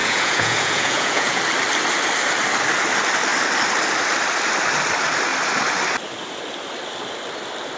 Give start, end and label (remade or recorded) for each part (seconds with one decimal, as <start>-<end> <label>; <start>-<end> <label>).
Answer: 0.0-1.4 remade; 1.4-7.8 recorded